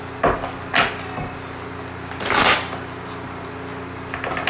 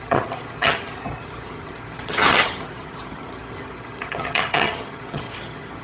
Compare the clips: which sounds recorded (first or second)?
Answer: first